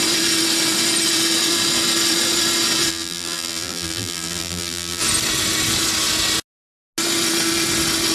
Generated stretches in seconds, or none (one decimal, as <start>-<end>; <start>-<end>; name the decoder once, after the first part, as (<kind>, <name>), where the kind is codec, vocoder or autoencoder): 2.9-5.0 (vocoder, BigVGAN v2)